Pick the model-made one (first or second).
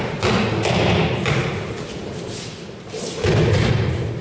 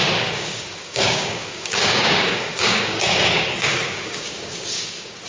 second